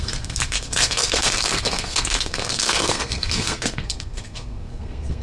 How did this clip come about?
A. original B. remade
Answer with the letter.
B